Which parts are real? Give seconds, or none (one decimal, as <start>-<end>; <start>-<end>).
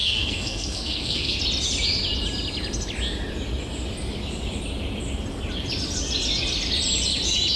1.4-7.6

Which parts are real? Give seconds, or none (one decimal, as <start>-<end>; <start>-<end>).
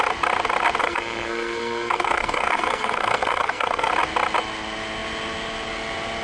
0.0-0.8; 3.9-6.2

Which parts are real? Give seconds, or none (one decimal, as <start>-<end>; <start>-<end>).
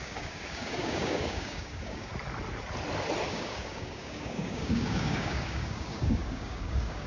2.1-3.3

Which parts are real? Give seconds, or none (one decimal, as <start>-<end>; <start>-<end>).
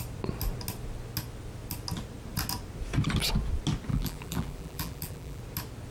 0.0-3.9; 5.4-5.9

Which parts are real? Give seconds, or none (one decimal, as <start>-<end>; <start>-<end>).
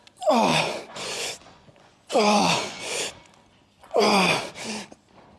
0.0-0.5; 3.0-3.8; 4.4-5.4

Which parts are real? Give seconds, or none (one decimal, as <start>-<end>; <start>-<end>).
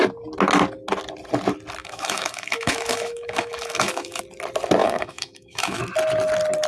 0.0-1.8; 4.2-4.8; 5.8-6.7